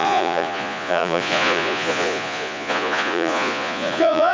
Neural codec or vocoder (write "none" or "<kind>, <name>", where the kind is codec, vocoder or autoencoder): vocoder, Vocos